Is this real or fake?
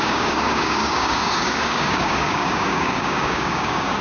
fake